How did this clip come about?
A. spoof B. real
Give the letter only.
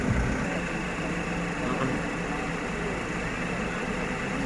B